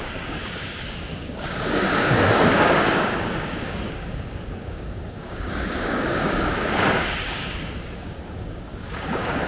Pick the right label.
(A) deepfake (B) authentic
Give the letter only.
A